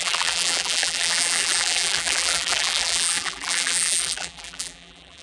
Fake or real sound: fake